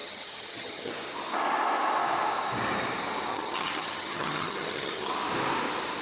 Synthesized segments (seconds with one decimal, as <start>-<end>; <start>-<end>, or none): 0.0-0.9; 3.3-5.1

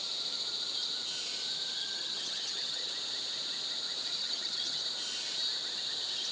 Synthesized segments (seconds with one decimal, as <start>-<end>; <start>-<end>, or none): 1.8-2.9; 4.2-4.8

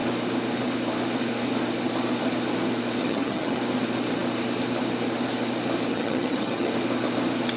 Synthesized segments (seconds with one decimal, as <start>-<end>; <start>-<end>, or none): 3.0-3.6; 5.9-6.7

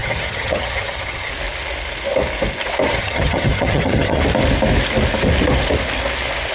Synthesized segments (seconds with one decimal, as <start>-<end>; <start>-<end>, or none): 0.0-1.3; 2.9-4.2

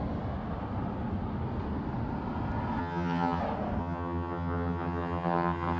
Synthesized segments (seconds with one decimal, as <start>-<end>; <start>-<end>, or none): 2.8-3.4; 3.8-5.8

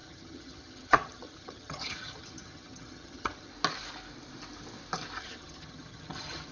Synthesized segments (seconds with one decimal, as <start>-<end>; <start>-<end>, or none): 0.0-3.5; 5.2-6.5

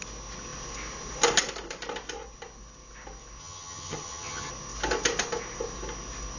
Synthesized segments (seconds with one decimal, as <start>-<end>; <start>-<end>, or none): 3.4-4.5

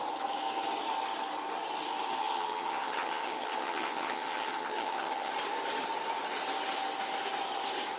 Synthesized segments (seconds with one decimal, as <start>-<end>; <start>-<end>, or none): 2.2-5.3